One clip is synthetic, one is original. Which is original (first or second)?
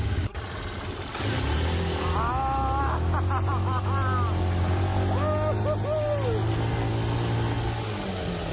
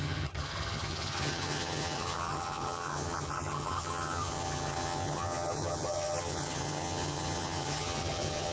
first